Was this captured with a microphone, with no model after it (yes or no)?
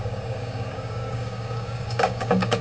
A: no